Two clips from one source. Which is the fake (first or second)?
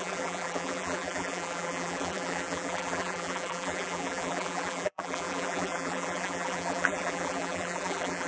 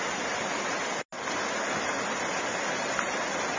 first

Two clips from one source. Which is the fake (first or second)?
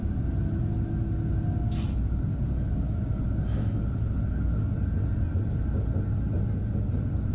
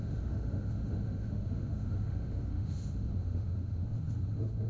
second